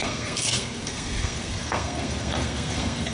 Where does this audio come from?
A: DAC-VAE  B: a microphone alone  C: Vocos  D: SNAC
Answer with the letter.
D